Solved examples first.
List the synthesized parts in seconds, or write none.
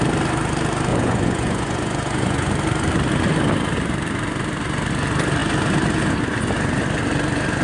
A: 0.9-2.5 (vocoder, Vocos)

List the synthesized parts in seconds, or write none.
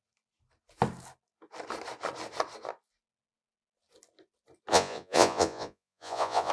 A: 4.7-6.5 (vocoder, Vocos)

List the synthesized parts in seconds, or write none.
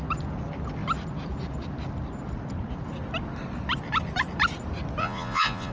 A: 5.0-5.7 (vocoder, Vocos)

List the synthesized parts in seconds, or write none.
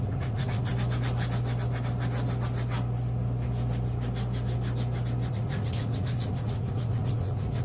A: 0.0-0.7 (vocoder, Vocos); 5.3-7.6